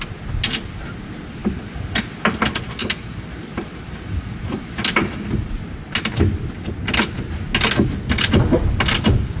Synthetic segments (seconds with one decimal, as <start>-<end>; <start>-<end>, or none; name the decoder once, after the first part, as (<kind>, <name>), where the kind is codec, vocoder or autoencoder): none